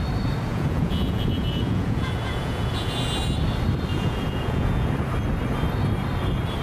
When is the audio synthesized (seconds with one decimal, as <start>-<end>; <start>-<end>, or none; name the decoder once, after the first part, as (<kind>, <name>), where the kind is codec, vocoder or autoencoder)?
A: 0.5-3.0 (vocoder, Vocos); 3.9-4.9